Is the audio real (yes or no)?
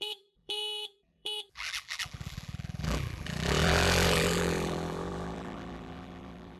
no